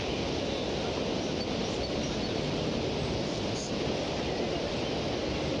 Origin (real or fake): real